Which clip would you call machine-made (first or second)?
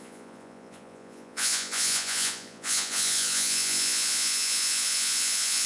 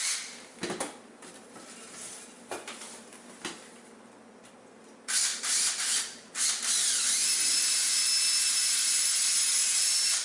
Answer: first